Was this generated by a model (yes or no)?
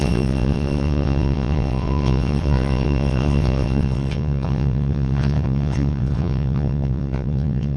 yes